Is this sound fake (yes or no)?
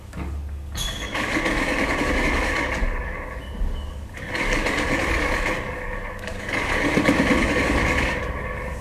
yes